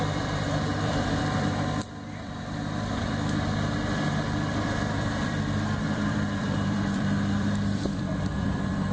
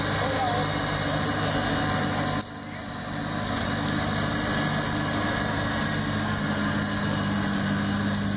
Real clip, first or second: second